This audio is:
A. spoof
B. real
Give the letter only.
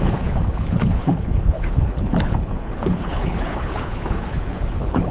A